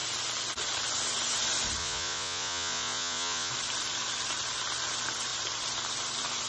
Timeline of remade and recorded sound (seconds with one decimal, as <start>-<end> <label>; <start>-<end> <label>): 0.0-1.8 recorded; 1.8-3.5 remade; 3.5-6.5 recorded